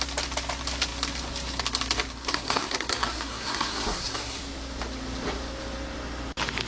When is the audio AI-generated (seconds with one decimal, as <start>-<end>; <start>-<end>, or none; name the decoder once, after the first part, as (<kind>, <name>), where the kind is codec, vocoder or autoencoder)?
2.2-4.4 (codec, SNAC)